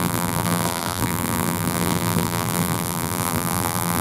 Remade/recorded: remade